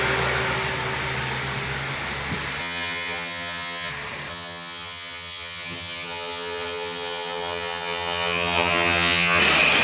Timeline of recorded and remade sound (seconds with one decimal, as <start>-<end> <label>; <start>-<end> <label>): 0.0-2.6 recorded; 2.6-3.9 remade; 3.9-4.3 recorded; 4.3-9.4 remade; 9.4-9.8 recorded